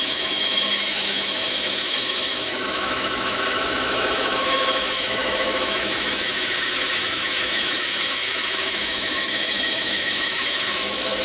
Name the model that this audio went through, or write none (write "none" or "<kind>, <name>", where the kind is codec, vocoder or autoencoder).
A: autoencoder, DAC-VAE